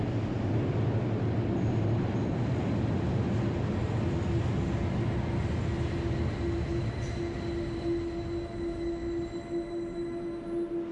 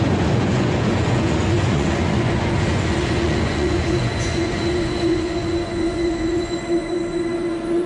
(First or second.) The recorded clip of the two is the first